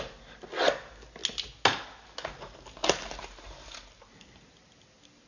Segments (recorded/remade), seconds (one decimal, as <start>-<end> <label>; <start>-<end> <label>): 0.0-5.3 recorded

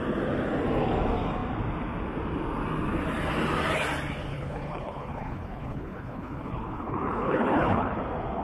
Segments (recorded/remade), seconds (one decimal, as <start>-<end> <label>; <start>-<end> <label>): 0.0-4.3 recorded; 4.3-8.0 remade; 8.0-8.4 recorded